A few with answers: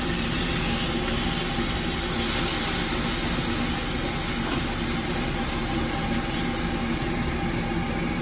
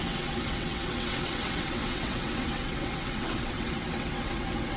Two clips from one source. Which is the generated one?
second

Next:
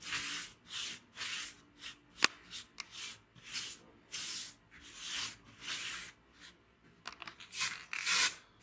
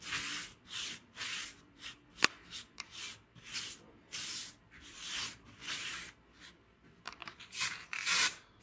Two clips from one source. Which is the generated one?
second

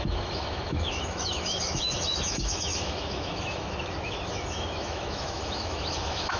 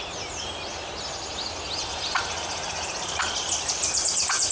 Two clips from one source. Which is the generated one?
first